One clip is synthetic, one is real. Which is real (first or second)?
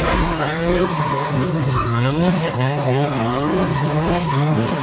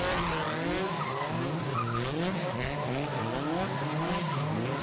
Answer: second